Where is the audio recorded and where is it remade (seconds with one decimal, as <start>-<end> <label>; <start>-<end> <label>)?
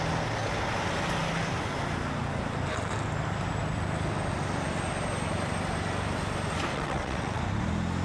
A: 0.0-6.7 recorded; 6.7-7.4 remade; 7.4-8.0 recorded